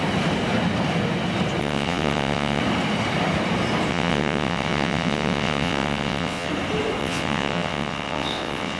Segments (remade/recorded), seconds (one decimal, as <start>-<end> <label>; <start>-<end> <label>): 0.0-1.6 recorded; 1.6-2.6 remade; 2.6-3.9 recorded; 3.9-6.5 remade; 6.5-7.0 recorded; 7.0-8.8 remade